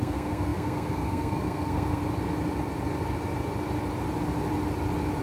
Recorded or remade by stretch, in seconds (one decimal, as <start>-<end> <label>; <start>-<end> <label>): 0.0-2.0 remade; 2.0-5.2 recorded